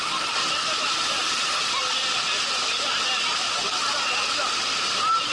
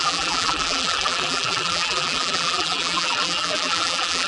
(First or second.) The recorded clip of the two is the first